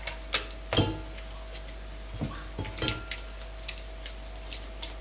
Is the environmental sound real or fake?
real